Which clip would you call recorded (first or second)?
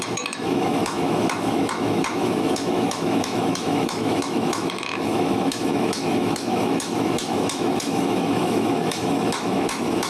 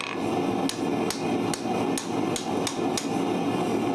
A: second